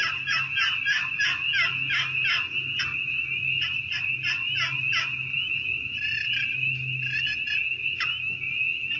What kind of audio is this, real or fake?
real